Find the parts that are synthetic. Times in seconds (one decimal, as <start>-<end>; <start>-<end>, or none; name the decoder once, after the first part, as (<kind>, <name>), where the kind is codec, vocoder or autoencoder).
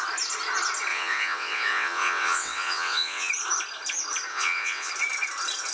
0.9-3.3 (vocoder, WaveNeXt); 4.3-4.9